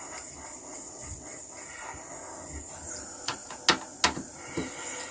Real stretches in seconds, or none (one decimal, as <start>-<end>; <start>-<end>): 0.0-0.7; 1.4-5.1